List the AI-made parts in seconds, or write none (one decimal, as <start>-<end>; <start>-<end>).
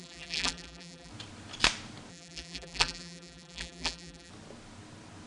0.0-1.1; 2.1-4.3